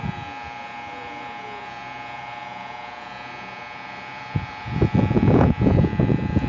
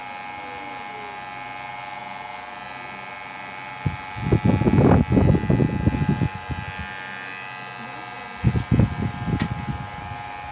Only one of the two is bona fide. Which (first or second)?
second